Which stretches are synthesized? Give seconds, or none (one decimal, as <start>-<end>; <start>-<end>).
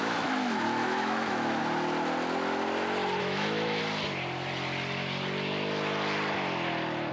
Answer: 0.0-1.6; 3.2-3.8